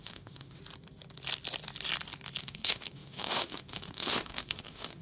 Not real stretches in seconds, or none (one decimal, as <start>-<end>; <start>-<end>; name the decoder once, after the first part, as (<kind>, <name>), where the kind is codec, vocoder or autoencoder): 0.0-0.6 (autoencoder, DAC-VAE); 2.4-5.0